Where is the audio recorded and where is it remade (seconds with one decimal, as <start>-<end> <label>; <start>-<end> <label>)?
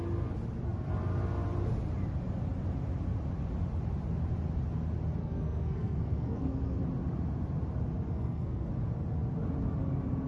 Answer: 0.0-5.2 recorded; 5.2-6.8 remade; 6.8-8.1 recorded; 8.1-8.7 remade; 8.7-10.3 recorded